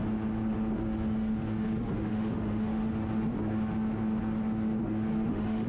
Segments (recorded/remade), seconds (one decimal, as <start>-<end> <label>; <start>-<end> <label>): 0.0-2.1 recorded; 2.1-2.7 remade; 2.7-5.3 recorded; 5.3-5.7 remade

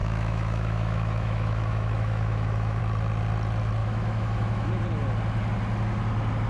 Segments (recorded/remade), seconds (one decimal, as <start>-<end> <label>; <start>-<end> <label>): 0.0-2.8 remade; 2.8-3.8 recorded; 3.8-4.7 remade; 4.7-6.5 recorded

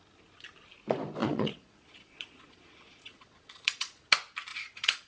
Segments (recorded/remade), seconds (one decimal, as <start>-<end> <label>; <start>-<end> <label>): 0.0-1.2 recorded; 1.2-4.1 remade; 4.1-4.5 recorded; 4.5-5.1 remade

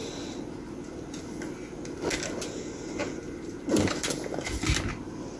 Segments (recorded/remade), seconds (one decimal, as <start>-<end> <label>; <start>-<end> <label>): 0.0-1.3 remade; 1.3-3.0 recorded; 3.0-4.6 remade; 4.6-5.4 recorded